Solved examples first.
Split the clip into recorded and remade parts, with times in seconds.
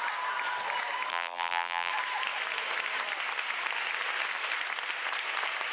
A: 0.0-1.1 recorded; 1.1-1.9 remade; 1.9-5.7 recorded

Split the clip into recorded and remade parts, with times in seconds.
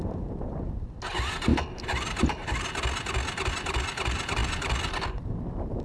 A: 0.0-5.8 recorded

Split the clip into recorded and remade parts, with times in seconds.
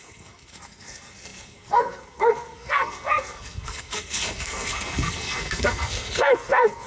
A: 0.0-6.9 remade